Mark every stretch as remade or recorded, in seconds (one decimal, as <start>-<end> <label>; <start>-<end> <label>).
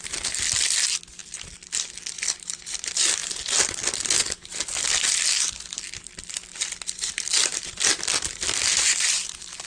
0.0-9.7 recorded